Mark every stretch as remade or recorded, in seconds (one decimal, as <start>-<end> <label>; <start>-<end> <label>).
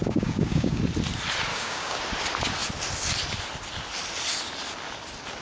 0.0-0.8 remade; 0.8-1.5 recorded; 1.5-2.0 remade; 2.0-5.4 recorded